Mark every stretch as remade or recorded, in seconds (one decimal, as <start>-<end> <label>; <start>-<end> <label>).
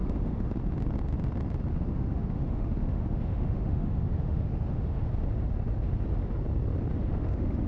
0.0-0.6 remade; 0.6-1.7 recorded; 1.7-5.1 remade; 5.1-7.0 recorded; 7.0-7.7 remade